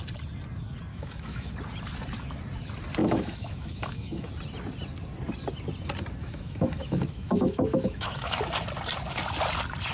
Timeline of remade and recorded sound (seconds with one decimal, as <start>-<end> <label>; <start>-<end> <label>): 0.0-0.9 recorded; 0.9-1.5 remade; 1.5-3.0 recorded; 3.0-4.3 remade; 4.3-6.2 recorded; 6.2-8.4 remade; 8.4-9.9 recorded